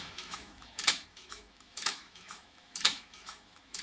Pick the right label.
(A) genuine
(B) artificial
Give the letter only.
B